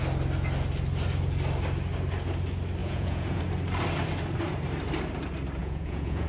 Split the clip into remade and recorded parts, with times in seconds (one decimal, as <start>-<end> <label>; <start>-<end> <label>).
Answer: 0.0-2.8 recorded; 2.8-3.4 remade; 3.4-5.6 recorded; 5.6-6.3 remade